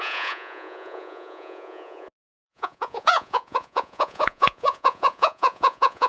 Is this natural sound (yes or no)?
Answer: no